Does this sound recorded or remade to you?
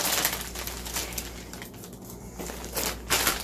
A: recorded